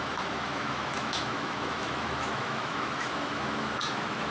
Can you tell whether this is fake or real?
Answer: fake